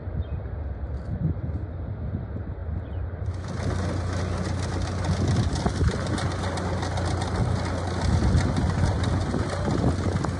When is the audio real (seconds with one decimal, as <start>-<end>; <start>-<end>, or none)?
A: 0.0-10.4